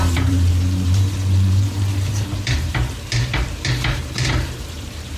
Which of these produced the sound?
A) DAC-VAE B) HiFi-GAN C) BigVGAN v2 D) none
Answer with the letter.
C